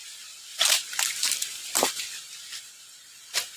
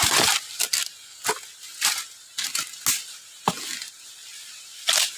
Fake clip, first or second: first